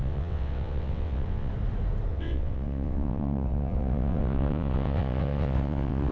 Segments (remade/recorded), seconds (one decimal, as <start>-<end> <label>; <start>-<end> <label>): 0.0-1.5 remade; 1.5-2.1 recorded; 2.1-6.1 remade